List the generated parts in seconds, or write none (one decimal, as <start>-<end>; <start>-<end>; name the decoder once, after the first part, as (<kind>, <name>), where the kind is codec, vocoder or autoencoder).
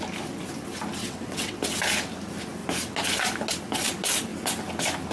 1.0-1.6 (vocoder, WaveNeXt)